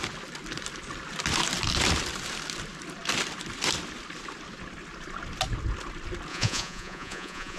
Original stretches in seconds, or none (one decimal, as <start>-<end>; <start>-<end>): 0.0-6.3